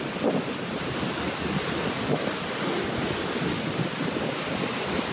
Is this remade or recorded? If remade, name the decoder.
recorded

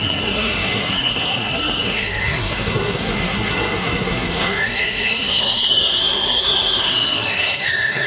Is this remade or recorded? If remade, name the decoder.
remade, codec, SNAC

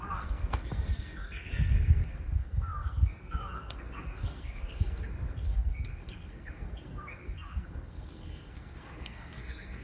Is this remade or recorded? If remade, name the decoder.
remade, codec, SNAC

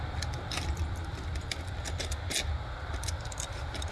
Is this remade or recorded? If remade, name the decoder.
recorded